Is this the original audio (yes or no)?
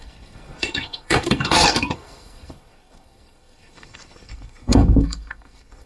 no